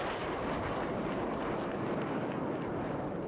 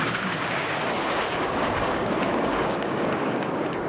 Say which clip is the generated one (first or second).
second